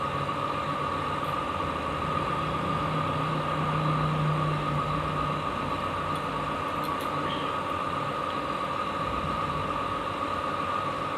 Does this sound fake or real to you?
real